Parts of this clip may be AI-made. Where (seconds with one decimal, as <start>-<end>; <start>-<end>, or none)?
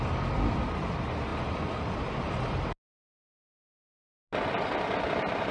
none